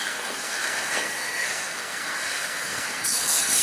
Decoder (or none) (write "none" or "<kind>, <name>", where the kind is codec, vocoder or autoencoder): codec, SNAC